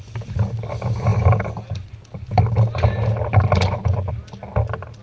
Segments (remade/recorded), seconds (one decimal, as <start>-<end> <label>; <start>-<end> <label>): 0.0-5.0 recorded